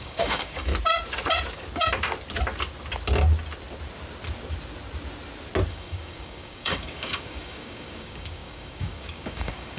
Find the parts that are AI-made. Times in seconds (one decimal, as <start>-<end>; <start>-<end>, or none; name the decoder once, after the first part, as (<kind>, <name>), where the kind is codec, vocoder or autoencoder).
0.0-0.7 (codec, DAC); 5.7-9.8